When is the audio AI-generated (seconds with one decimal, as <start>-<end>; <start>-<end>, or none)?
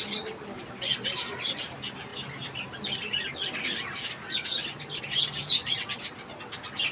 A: none